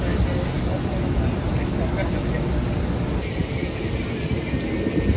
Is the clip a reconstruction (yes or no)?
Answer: no